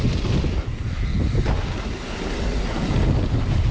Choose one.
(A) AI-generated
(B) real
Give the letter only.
B